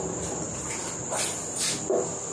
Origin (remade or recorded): recorded